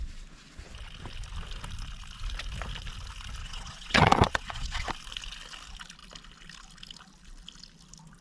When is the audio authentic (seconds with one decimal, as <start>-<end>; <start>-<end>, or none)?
0.0-3.4; 4.9-8.2